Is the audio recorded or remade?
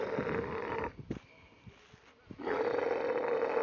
recorded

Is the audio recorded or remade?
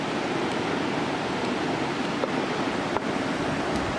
recorded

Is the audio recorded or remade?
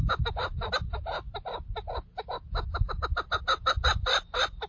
recorded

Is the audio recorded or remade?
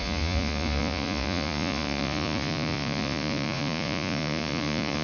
remade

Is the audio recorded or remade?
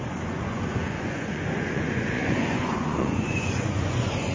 remade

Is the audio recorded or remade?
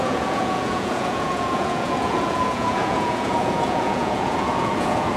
remade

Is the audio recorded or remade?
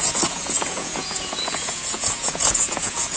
remade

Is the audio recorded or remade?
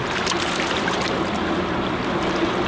recorded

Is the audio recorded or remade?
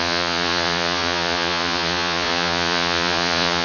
remade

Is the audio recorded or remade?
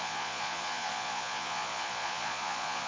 remade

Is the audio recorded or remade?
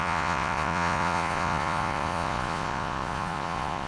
remade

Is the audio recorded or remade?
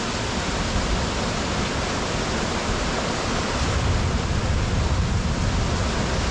recorded